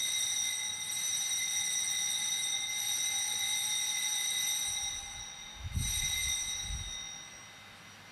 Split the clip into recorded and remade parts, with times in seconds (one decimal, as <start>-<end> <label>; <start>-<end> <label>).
0.0-0.7 recorded; 0.7-1.4 remade; 1.4-8.1 recorded